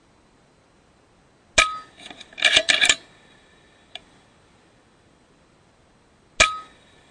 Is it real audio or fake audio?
real